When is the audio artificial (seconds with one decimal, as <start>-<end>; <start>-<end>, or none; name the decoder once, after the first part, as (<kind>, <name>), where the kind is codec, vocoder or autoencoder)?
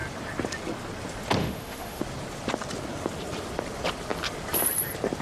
1.4-2.0 (autoencoder, DAC-VAE)